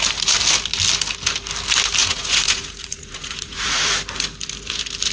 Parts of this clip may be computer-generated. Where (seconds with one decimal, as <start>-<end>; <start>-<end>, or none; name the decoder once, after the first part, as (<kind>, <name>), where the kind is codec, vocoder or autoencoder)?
2.0-3.8 (vocoder, Vocos)